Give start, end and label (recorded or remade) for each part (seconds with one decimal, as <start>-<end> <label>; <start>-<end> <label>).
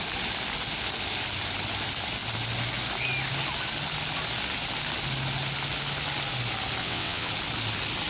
0.0-6.8 recorded; 6.8-7.3 remade; 7.3-8.1 recorded